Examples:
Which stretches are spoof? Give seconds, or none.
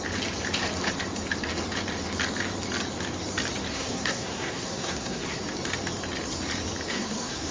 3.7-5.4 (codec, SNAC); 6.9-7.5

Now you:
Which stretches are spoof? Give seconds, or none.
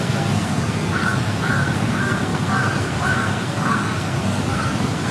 0.0-5.1 (codec, SNAC)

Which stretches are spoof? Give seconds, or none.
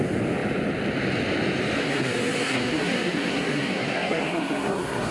1.8-5.1 (codec, SNAC)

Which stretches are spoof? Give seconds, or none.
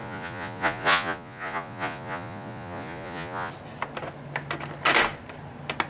0.0-3.5 (vocoder, Vocos)